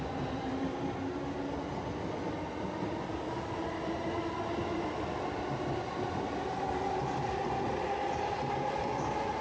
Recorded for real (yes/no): yes